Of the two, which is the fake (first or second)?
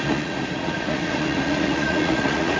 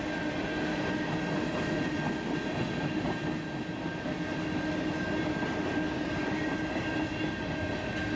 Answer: first